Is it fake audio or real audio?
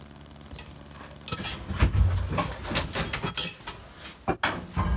real